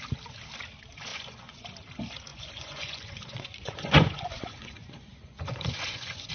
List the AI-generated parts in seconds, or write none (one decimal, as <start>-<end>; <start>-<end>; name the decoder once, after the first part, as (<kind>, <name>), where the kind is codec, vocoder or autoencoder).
1.1-1.6 (vocoder, Vocos); 2.3-6.3

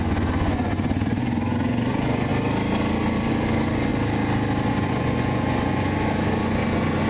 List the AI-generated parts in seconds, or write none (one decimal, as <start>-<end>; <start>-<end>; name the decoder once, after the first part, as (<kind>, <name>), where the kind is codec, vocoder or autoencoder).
0.0-2.3 (vocoder, Vocos); 3.3-3.9; 4.7-7.1

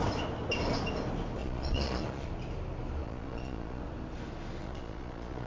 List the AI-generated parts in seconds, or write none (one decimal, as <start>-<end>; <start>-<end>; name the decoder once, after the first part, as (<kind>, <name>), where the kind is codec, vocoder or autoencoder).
1.4-2.3 (vocoder, Vocos); 3.0-3.8; 4.6-5.5

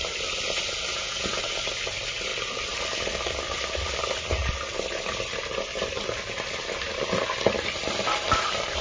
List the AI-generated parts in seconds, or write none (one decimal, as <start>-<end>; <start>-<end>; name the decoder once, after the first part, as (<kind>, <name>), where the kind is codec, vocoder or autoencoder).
0.9-1.4 (vocoder, Vocos)